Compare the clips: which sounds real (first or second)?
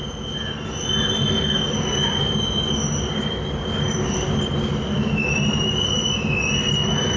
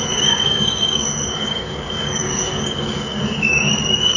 first